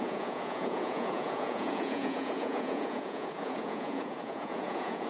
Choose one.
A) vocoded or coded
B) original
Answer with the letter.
A